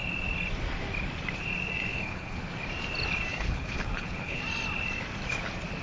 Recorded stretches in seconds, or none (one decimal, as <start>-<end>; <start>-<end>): 0.0-1.9; 2.5-3.3; 4.4-5.8